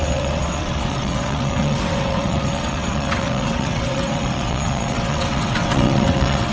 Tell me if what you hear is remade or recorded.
remade